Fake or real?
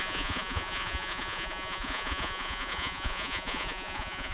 fake